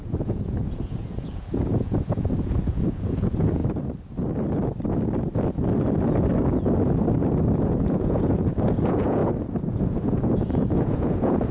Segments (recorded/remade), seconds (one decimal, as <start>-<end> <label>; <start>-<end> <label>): 0.0-3.6 remade; 3.6-7.6 recorded; 7.6-9.2 remade; 9.2-9.7 recorded; 9.7-11.5 remade